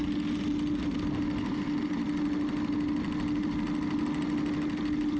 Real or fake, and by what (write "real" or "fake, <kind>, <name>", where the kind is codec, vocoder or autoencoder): real